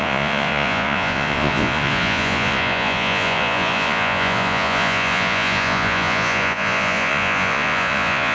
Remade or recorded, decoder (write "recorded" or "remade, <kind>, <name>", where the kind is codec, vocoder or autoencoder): remade, vocoder, Vocos